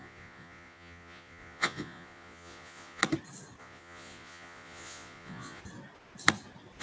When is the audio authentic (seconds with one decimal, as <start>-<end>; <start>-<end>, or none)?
3.0-3.6; 5.6-6.8